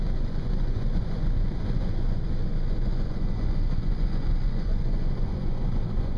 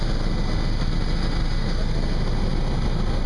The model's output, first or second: first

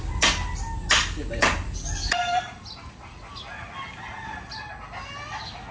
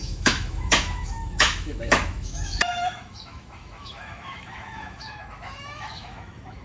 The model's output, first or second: second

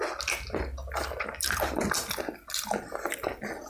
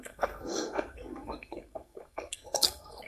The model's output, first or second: second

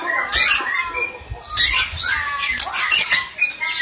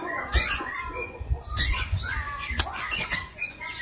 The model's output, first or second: second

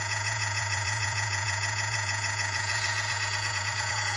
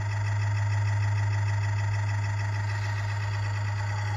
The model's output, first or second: first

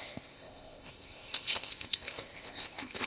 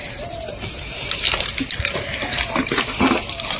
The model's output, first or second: first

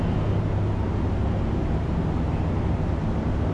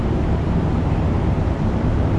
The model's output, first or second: second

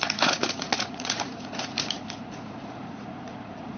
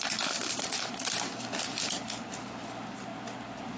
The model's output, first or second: first